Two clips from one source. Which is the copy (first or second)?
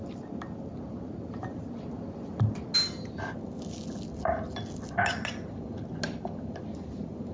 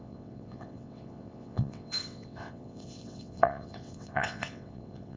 second